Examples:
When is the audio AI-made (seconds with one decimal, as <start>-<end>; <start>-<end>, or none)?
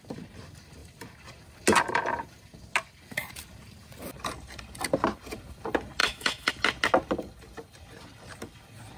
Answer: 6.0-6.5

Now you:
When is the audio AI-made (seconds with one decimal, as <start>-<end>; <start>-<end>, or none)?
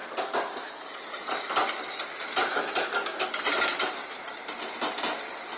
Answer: none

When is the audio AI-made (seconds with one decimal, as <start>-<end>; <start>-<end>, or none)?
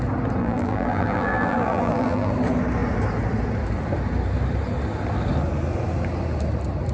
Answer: 0.4-2.3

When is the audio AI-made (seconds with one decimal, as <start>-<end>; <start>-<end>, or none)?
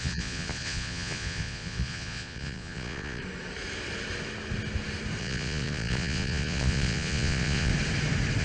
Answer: 0.0-3.2; 5.2-7.7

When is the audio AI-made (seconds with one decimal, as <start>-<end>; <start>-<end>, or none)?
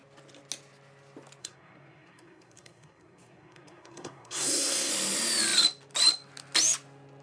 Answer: 1.4-4.9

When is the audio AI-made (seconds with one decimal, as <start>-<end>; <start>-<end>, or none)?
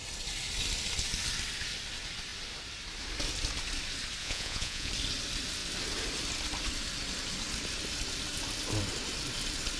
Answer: 4.2-4.9